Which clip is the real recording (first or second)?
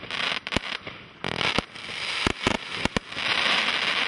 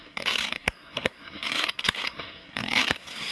first